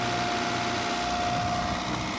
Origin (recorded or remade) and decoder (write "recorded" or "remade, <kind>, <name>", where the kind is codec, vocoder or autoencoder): recorded